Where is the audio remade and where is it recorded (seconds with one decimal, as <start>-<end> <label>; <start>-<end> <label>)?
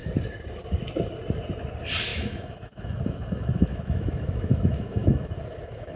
0.0-2.1 recorded; 2.1-6.0 remade